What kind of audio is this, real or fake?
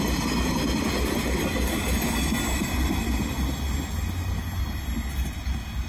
real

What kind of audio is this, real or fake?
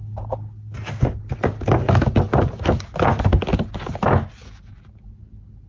real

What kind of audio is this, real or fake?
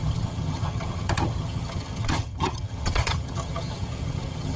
fake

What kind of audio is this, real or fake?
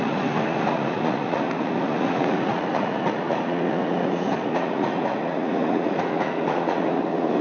fake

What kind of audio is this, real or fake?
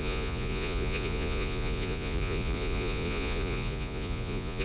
fake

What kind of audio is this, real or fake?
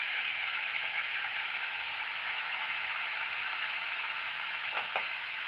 fake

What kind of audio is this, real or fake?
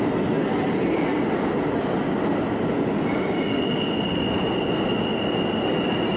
real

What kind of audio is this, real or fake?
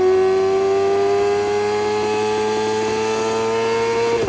real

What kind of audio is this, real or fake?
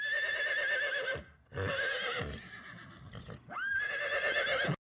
real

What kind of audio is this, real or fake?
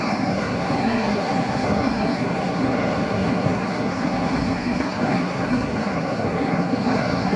fake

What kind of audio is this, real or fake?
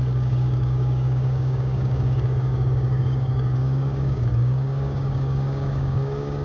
fake